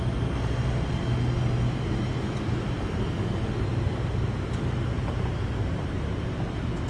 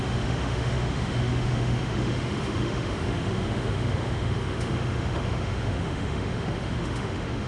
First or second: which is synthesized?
second